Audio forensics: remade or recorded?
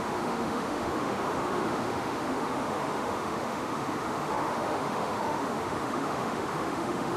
remade